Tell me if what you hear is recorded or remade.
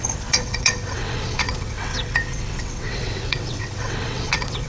remade